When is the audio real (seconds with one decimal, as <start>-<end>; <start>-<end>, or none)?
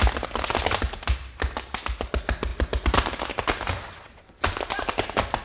0.0-5.4